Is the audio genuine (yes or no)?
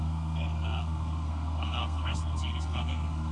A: no